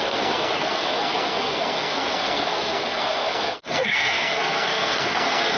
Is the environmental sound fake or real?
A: fake